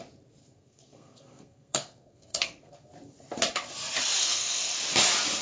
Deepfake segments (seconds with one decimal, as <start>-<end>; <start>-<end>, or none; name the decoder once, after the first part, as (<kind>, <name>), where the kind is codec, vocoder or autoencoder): 0.4-2.9 (codec, SNAC); 4.2-4.8